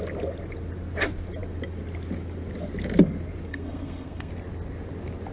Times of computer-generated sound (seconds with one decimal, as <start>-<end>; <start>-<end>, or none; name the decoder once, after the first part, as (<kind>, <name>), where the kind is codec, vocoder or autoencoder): 3.5-4.3 (codec, SNAC)